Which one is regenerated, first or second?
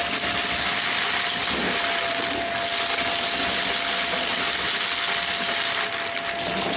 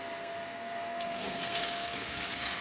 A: second